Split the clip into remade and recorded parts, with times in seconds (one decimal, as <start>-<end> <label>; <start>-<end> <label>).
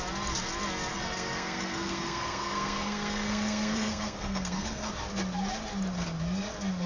0.0-0.9 recorded; 0.9-4.9 remade; 4.9-6.9 recorded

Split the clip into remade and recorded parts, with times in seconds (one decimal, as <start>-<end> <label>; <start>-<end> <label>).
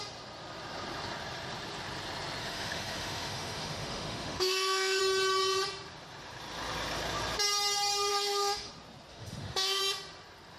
0.0-2.4 recorded; 2.4-5.0 remade; 5.0-8.1 recorded; 8.1-8.7 remade; 8.7-9.1 recorded; 9.1-9.8 remade; 9.8-10.6 recorded